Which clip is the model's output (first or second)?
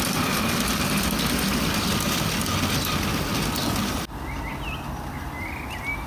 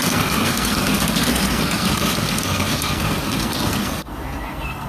second